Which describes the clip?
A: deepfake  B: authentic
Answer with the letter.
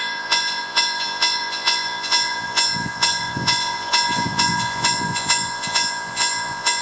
A